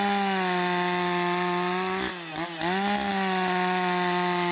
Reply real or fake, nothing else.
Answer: real